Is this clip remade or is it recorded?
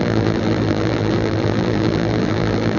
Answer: remade